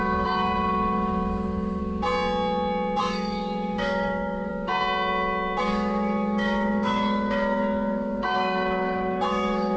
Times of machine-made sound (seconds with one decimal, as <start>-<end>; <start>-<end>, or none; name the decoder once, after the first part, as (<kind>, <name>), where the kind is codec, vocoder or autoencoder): 0.0-1.8 (codec, DAC); 3.0-4.5; 5.6-9.8

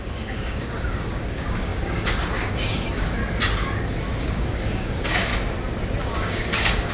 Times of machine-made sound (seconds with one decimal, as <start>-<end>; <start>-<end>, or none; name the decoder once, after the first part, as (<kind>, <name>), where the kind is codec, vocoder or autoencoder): 0.0-3.2 (codec, DAC); 4.2-5.3; 6.0-6.9

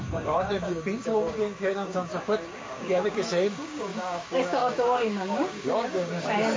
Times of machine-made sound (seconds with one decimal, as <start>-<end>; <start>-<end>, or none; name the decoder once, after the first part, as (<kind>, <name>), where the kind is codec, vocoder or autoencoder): 0.0-6.6 (codec, DAC)